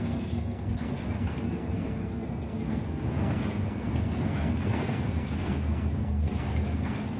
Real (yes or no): no